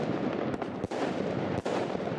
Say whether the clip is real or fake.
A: real